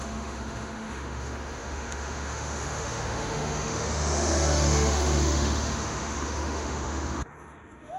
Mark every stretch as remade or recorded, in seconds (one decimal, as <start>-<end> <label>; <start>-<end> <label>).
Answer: 0.0-8.0 remade